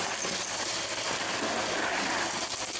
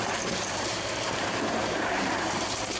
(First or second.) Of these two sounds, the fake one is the second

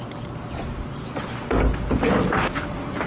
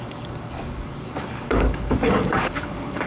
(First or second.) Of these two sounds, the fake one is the second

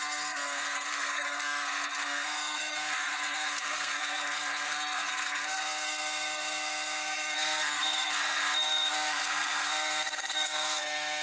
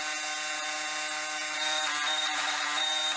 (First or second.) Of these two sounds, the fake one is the first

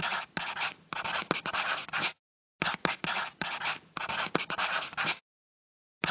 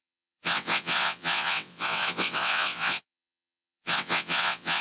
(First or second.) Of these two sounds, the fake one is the second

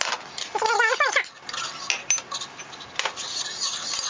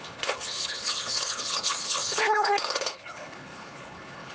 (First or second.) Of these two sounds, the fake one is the second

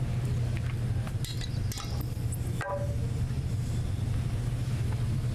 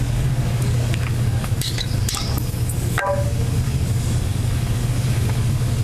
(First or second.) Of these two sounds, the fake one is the second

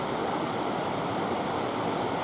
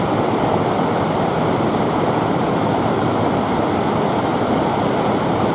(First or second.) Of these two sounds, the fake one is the second